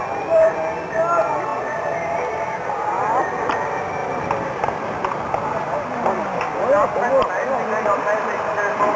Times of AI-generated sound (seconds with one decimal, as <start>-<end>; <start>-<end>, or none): none